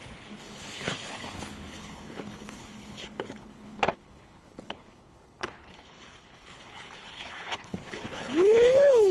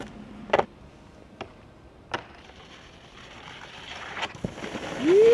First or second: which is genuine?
second